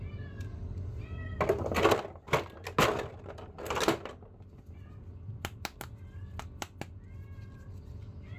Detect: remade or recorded recorded